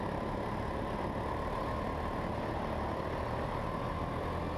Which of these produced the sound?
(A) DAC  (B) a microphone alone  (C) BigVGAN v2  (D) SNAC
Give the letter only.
B